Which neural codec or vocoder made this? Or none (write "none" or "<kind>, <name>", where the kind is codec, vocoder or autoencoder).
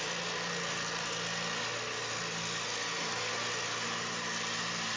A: none